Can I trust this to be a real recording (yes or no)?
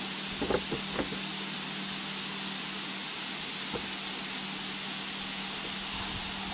yes